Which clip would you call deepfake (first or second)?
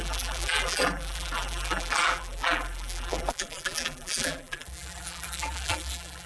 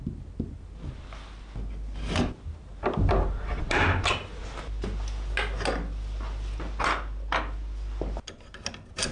first